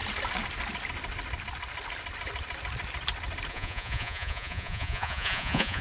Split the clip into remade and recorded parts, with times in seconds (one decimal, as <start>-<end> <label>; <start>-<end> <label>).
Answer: 0.0-3.5 recorded; 3.5-5.8 remade